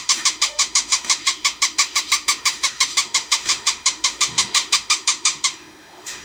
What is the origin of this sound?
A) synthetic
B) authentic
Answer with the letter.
A